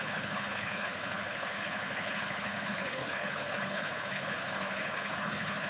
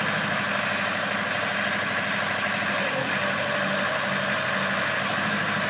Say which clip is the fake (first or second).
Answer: first